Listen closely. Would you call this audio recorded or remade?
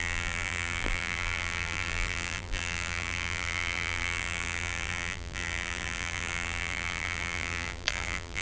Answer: remade